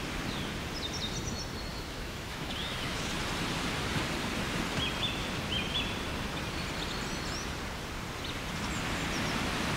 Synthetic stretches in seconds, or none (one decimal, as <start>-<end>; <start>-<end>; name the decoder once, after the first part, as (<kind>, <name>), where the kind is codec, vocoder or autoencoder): 1.7-3.1 (autoencoder, DAC-VAE)